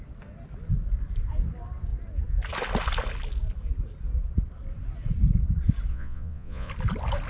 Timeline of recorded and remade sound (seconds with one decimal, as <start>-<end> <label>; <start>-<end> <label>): 0.0-5.9 recorded; 5.9-6.7 remade; 6.7-7.3 recorded